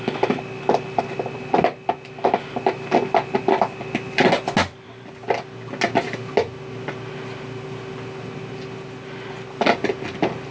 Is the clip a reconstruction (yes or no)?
no